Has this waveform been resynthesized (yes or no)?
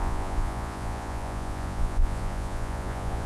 yes